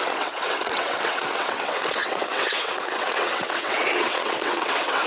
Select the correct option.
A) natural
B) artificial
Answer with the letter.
B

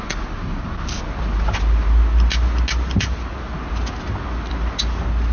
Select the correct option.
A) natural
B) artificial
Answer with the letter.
A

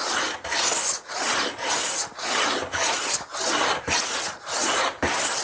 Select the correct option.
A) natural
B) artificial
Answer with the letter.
A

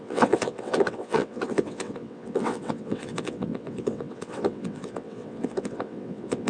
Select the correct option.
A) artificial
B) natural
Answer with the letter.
A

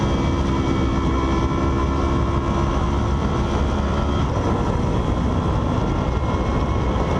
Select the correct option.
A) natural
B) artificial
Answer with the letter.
A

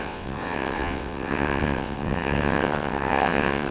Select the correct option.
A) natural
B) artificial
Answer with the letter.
B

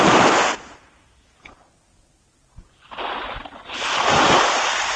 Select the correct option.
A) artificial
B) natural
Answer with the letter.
B